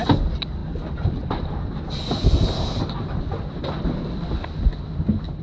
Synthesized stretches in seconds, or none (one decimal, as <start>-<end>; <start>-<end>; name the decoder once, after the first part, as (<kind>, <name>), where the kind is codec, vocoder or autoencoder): none

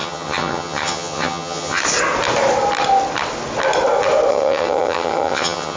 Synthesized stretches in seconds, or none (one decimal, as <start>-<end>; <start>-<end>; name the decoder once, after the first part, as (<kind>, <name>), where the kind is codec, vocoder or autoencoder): 0.0-1.8 (vocoder, HiFi-GAN); 4.3-5.8

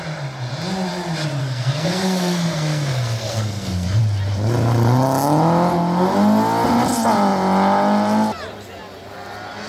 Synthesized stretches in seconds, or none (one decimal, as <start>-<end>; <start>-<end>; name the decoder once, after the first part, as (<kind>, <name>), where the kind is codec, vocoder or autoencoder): 1.4-4.0 (codec, SNAC)

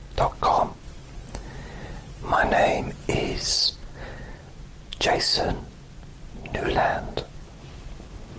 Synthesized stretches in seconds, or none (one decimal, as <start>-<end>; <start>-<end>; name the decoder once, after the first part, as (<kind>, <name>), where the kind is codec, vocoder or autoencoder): none